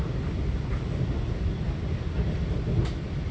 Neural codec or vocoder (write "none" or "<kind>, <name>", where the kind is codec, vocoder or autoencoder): none